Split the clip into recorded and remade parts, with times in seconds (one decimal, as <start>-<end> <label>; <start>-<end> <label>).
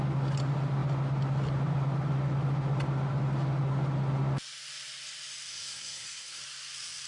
0.0-5.5 recorded; 5.5-6.4 remade; 6.4-7.1 recorded